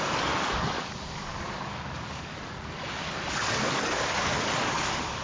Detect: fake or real fake